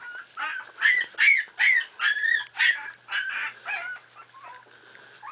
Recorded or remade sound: recorded